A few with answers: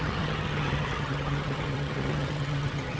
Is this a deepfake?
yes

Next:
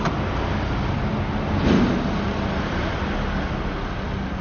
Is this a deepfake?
no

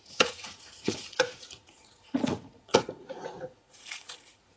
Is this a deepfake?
yes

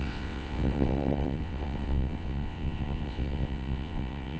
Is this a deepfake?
yes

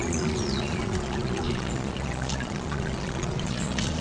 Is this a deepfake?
yes